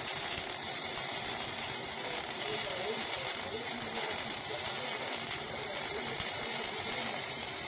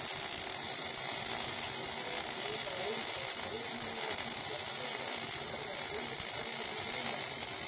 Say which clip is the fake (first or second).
first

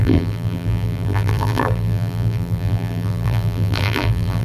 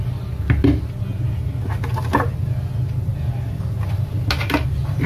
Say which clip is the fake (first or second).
first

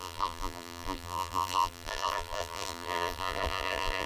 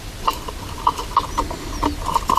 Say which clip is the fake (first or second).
first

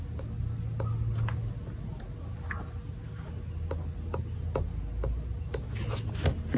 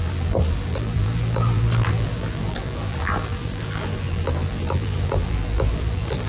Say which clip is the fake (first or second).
second